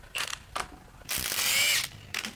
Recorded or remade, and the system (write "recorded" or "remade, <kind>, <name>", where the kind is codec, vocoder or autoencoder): remade, vocoder, BigVGAN v2